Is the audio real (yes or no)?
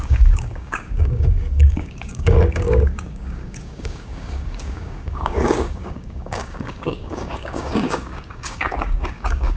no